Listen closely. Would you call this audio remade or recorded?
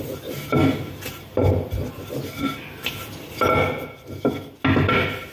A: recorded